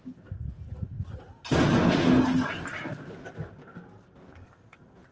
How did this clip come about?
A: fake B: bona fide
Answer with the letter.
B